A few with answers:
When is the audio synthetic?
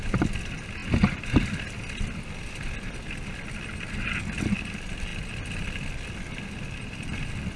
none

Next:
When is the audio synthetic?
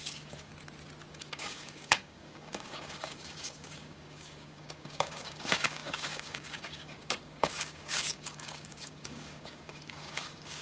0.0-0.5 (codec, DAC); 1.1-10.6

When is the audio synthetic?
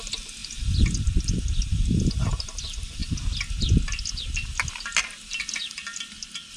0.0-3.0 (vocoder, BigVGAN v2); 4.0-6.6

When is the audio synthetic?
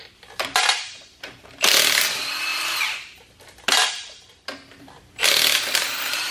0.0-1.5 (vocoder, BigVGAN v2)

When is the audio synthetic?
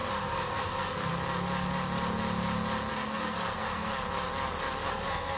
0.0-1.1 (codec, SNAC); 2.9-3.9; 4.9-5.4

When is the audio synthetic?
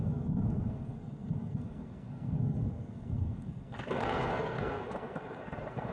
0.0-5.9 (codec, SNAC)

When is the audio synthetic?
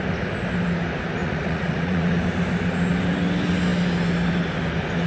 1.2-2.2 (vocoder, Vocos)